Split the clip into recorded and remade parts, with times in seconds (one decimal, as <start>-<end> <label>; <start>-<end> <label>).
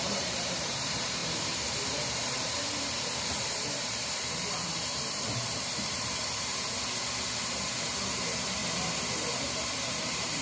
0.0-6.5 remade; 6.5-7.4 recorded; 7.4-8.6 remade; 8.6-9.3 recorded; 9.3-10.4 remade